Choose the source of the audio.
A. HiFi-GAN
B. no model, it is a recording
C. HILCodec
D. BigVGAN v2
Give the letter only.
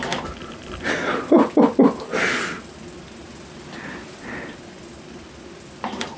B